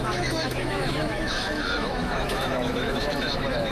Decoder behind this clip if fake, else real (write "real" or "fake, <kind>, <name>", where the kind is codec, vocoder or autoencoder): fake, autoencoder, DAC-VAE